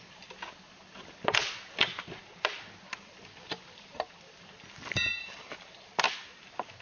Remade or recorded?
recorded